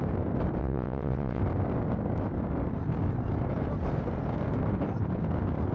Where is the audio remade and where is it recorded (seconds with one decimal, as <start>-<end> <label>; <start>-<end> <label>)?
0.0-0.6 recorded; 0.6-1.4 remade; 1.4-5.7 recorded